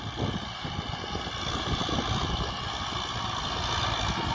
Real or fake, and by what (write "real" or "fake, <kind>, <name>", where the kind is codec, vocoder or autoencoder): real